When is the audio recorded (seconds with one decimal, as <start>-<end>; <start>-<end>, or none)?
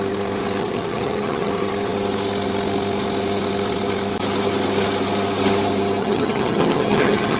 0.0-0.6; 1.5-6.0